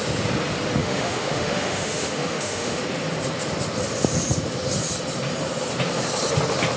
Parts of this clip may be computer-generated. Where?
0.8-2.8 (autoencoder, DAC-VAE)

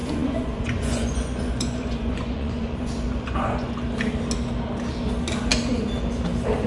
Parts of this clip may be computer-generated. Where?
0.0-3.7 (vocoder, Vocos)

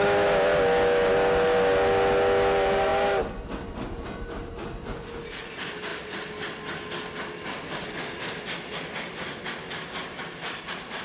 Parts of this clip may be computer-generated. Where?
none

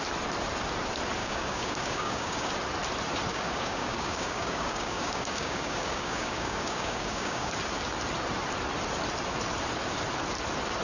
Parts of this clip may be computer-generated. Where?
1.2-2.5 (codec, DAC); 3.3-7.5